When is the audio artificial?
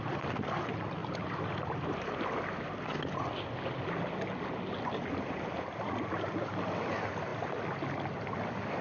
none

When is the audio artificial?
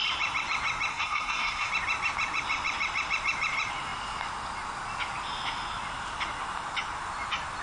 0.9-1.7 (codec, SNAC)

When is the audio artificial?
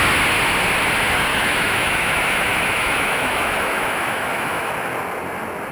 1.3-4.7 (autoencoder, DAC-VAE)